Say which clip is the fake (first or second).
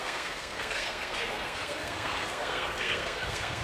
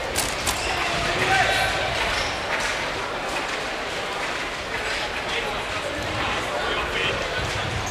first